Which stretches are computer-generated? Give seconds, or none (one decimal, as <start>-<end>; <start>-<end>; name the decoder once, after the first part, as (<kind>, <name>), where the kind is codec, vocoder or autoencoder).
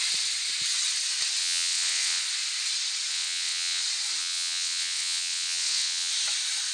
1.4-2.2 (vocoder, WaveNeXt); 3.1-3.8; 4.2-6.1